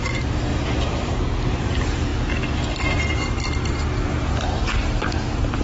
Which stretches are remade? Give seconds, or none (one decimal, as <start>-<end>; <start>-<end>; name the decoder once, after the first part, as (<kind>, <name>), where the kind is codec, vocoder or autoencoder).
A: 0.0-2.1 (vocoder, BigVGAN v2); 4.0-5.6